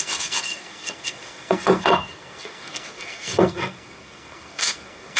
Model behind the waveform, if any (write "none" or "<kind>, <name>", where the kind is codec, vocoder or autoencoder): codec, SNAC